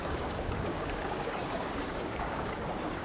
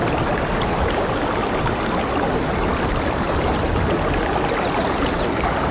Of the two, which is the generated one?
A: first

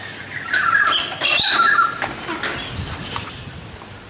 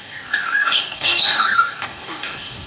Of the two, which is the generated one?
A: second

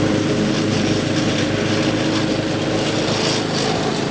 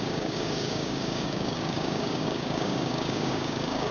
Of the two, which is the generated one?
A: second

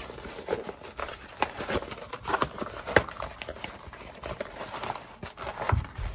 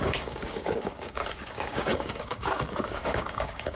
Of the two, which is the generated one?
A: second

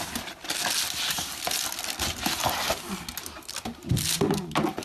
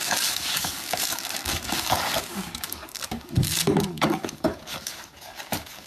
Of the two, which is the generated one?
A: second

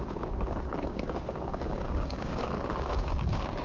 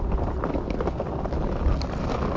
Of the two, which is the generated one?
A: first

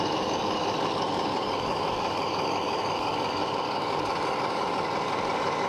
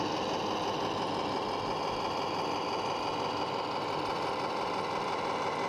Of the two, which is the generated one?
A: first